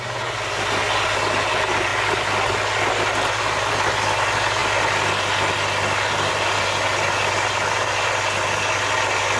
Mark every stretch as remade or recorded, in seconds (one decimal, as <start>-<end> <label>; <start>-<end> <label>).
0.0-9.4 recorded